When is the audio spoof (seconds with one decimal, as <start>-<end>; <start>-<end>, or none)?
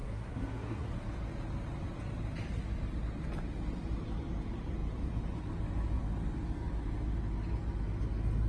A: 0.0-0.9